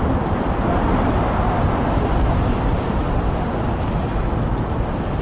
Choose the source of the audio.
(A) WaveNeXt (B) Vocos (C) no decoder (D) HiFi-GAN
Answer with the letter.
C